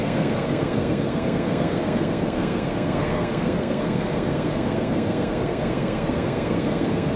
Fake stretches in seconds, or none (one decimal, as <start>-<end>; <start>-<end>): 0.0-7.2